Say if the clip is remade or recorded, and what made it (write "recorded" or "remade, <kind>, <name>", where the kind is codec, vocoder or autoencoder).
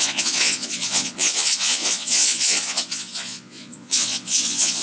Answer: remade, vocoder, Vocos